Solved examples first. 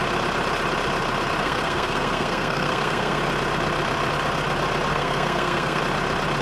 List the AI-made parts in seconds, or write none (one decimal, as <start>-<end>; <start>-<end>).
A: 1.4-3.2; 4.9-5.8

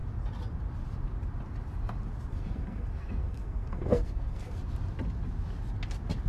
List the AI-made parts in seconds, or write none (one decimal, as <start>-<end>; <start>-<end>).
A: 2.3-4.6

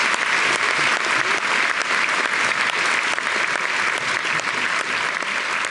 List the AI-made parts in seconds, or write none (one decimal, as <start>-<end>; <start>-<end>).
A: none

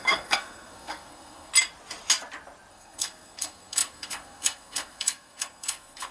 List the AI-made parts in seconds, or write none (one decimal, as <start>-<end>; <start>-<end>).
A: 0.0-1.5; 2.7-6.1

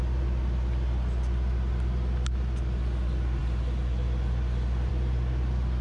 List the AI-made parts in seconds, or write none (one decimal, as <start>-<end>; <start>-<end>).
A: none

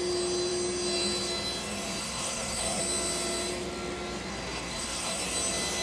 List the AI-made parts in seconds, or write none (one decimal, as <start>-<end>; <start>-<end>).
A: 2.0-2.8; 4.3-5.2

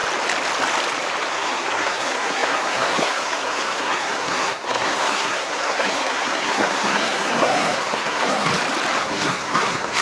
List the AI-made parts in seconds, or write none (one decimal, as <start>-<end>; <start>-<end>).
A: 1.3-8.5; 9.0-10.0